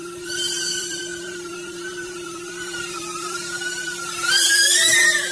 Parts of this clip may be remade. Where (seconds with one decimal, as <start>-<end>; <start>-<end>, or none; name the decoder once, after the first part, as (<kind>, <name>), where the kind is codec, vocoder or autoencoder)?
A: 0.0-5.3 (vocoder, BigVGAN v2)